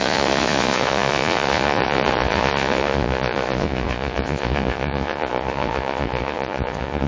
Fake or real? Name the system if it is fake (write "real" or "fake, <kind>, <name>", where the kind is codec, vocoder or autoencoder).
fake, vocoder, Vocos